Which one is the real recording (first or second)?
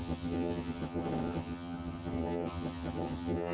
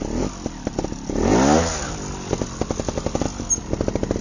second